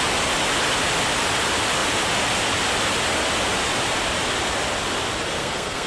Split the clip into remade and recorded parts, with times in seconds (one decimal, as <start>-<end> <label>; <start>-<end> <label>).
0.0-5.4 recorded; 5.4-5.9 remade